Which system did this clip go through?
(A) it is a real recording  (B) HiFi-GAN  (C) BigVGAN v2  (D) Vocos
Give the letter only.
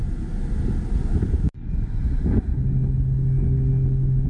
A